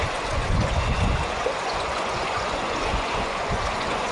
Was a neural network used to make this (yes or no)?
yes